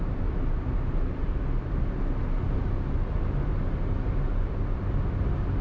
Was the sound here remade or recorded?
recorded